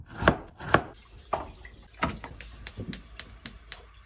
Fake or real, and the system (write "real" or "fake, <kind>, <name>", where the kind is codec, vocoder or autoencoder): real